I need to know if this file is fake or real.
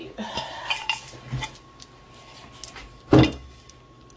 real